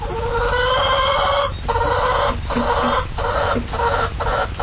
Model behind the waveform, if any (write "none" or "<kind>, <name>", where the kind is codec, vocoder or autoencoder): none